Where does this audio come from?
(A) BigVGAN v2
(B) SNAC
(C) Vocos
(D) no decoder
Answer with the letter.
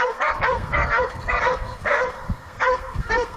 B